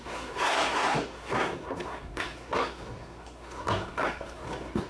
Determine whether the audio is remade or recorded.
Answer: remade